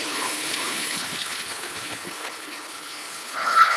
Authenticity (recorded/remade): remade